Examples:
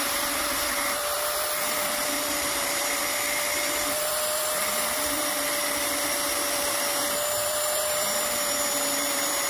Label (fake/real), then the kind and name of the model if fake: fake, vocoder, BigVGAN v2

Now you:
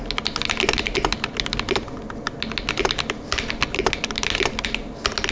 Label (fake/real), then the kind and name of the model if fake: real